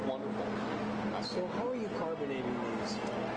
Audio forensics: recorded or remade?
recorded